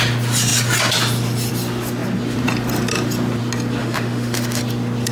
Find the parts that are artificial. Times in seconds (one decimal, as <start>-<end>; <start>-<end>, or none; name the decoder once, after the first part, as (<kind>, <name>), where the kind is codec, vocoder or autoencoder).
3.8-4.6 (autoencoder, DAC-VAE)